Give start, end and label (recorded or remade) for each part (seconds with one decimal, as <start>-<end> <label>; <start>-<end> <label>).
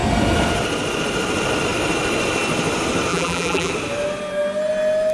0.0-3.1 recorded; 3.1-3.7 remade; 3.7-5.1 recorded